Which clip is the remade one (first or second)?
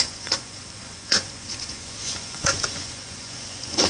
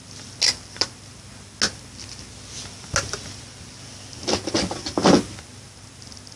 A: first